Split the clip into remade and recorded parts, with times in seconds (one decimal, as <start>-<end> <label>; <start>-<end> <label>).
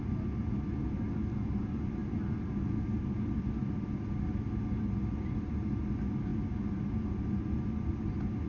0.0-8.5 recorded